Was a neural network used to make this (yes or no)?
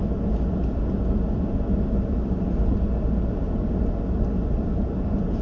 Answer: no